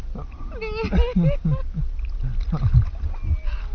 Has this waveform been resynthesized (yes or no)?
no